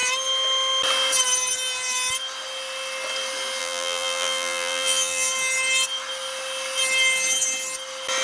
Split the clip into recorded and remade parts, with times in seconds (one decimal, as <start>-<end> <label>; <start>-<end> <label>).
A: 0.0-3.6 recorded; 3.6-5.3 remade; 5.3-8.2 recorded